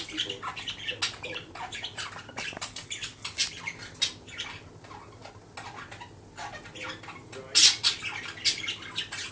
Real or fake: real